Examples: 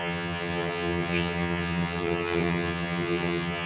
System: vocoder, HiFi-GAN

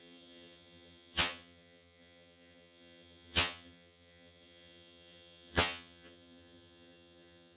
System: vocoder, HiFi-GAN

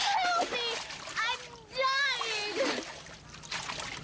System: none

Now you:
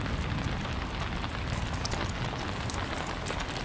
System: none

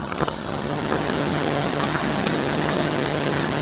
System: vocoder, HiFi-GAN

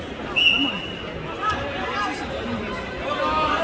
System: none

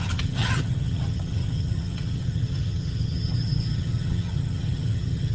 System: vocoder, HiFi-GAN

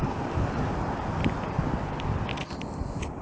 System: none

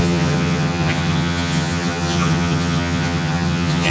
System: vocoder, HiFi-GAN